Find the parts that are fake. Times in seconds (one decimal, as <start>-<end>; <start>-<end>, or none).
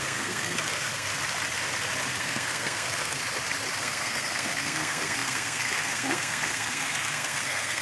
0.0-1.1; 2.2-3.2; 3.8-7.8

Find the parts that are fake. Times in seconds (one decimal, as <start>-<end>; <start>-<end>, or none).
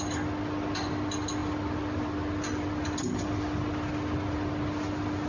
none